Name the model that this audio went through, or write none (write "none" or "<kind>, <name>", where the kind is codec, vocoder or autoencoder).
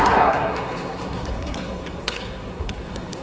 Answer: codec, SNAC